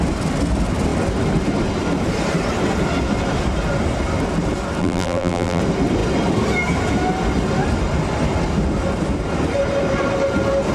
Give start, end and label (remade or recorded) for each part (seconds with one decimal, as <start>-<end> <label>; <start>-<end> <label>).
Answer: 0.0-4.8 recorded; 4.8-5.6 remade; 5.6-10.7 recorded